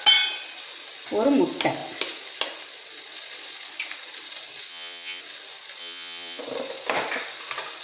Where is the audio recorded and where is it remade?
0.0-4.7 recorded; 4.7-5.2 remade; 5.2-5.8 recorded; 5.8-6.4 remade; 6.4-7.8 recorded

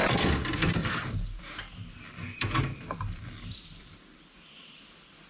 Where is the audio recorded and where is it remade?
0.0-0.8 recorded; 0.8-1.4 remade; 1.4-2.7 recorded; 2.7-4.8 remade; 4.8-5.3 recorded

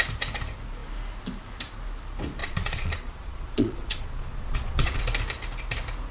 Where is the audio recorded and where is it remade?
0.0-2.4 recorded; 2.4-5.0 remade; 5.0-6.1 recorded

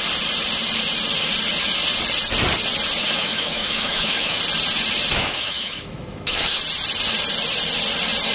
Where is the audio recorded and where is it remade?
0.0-3.0 recorded; 3.0-4.4 remade; 4.4-5.2 recorded; 5.2-6.6 remade; 6.6-8.3 recorded

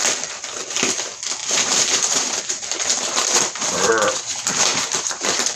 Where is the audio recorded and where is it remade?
0.0-1.4 recorded; 1.4-3.9 remade; 3.9-4.7 recorded; 4.7-5.6 remade

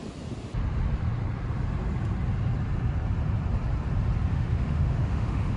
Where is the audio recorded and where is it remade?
0.0-4.3 recorded; 4.3-5.6 remade

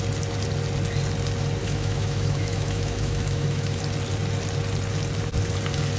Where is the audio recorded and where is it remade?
0.0-1.6 recorded; 1.6-3.8 remade; 3.8-6.0 recorded

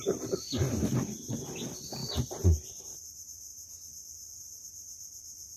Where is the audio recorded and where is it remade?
0.0-5.6 recorded